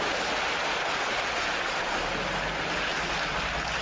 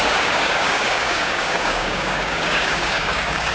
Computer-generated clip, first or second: second